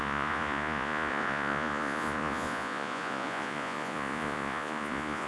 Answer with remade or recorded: remade